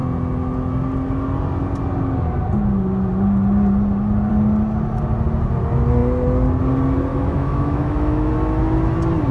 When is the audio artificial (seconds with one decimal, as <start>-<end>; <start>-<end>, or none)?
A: 7.1-8.3